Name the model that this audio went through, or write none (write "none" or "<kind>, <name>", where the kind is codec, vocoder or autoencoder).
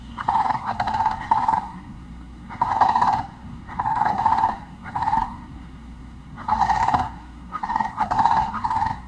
codec, SNAC